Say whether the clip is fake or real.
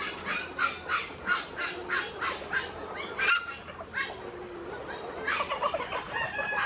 real